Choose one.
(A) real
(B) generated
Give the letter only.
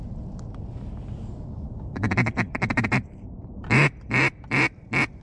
A